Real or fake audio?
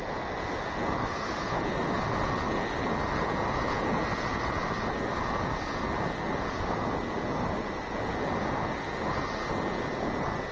real